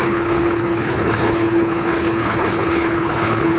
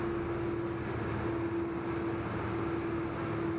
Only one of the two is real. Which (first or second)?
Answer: second